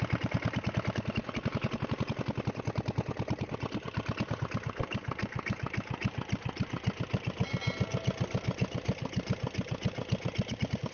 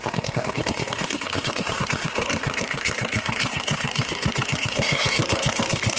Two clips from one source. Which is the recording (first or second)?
first